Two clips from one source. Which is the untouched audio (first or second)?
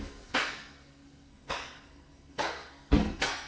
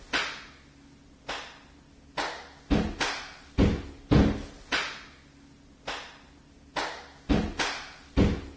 second